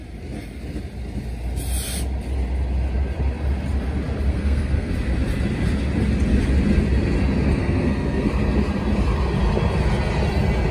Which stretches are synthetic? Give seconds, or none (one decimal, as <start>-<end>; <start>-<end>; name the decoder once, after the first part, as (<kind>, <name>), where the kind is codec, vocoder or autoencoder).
4.3-4.9 (codec, SNAC); 7.6-8.3